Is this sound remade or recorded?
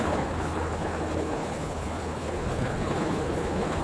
remade